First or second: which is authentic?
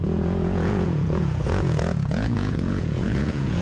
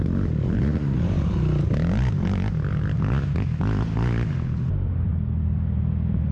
second